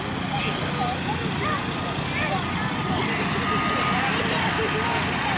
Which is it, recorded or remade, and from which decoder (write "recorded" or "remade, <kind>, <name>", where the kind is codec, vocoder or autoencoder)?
recorded